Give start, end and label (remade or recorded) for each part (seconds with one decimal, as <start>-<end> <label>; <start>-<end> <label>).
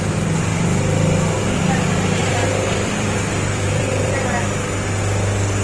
0.0-2.2 recorded; 2.2-4.3 remade; 4.3-5.6 recorded